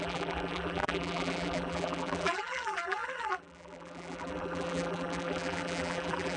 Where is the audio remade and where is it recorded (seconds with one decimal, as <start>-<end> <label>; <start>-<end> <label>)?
0.0-6.4 remade